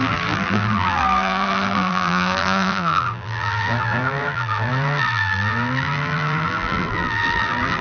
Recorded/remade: remade